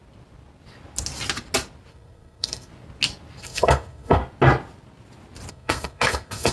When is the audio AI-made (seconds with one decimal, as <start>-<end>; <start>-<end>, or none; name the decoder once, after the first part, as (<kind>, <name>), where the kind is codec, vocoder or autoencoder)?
1.9-2.7 (codec, SNAC); 3.4-4.2; 5.5-6.5